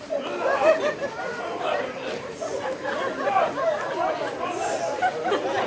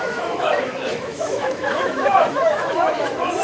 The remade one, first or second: second